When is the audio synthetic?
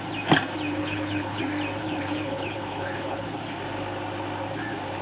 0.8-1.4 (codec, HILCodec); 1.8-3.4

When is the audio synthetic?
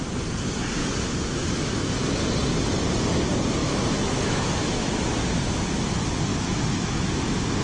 0.8-2.1 (autoencoder, DAC-VAE); 3.6-4.9; 6.3-7.6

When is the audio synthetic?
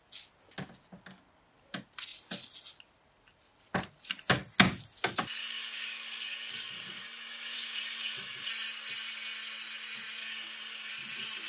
5.4-8.5 (codec, DAC); 10.2-10.9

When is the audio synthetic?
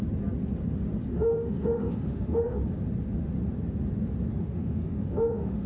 1.1-2.6 (autoencoder, DAC-VAE); 4.3-5.7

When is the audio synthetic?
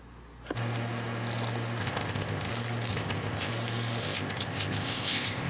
1.8-2.5 (codec, ZipCodec); 2.9-3.5; 4.0-5.5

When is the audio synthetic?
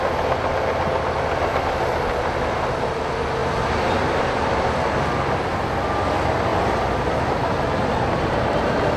3.4-4.7 (vocoder, BigVGAN v2); 6.5-7.2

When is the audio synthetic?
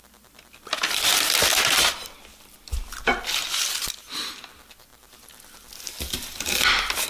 none